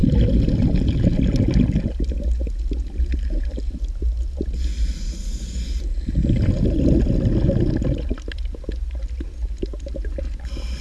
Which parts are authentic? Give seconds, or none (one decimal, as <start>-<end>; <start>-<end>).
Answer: 0.0-10.8